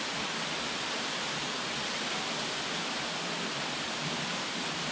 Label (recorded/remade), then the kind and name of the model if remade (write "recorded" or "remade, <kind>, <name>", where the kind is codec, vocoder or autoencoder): recorded